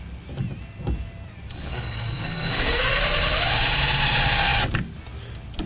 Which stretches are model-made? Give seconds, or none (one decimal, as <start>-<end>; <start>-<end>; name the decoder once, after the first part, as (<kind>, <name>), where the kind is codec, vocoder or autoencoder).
1.7-3.0 (codec, SNAC)